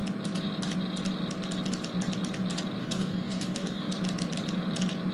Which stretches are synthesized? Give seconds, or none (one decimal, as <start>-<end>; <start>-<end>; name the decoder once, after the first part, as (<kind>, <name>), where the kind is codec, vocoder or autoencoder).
2.8-3.9 (codec, DAC)